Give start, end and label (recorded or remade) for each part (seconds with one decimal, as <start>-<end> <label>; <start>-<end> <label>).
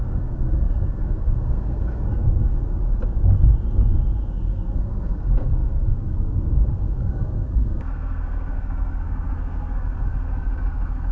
0.0-2.7 remade; 2.7-4.3 recorded; 4.3-11.1 remade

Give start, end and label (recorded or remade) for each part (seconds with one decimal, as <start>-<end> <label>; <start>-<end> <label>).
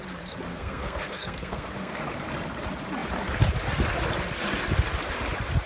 0.0-0.5 recorded; 0.5-2.0 remade; 2.0-5.7 recorded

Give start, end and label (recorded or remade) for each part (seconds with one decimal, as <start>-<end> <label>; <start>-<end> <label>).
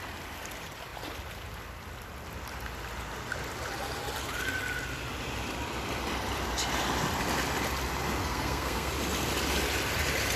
0.0-8.2 recorded; 8.2-8.9 remade; 8.9-10.4 recorded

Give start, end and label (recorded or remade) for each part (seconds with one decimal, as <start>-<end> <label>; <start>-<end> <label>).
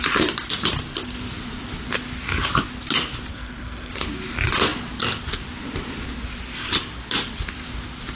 0.0-3.3 recorded; 3.3-3.9 remade; 3.9-8.2 recorded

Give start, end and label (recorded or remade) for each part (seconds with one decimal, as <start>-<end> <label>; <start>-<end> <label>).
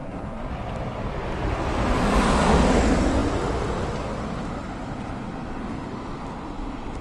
0.0-0.5 remade; 0.5-7.0 recorded